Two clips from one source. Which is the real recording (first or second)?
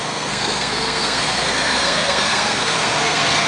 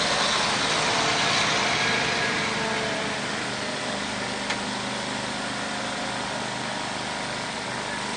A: second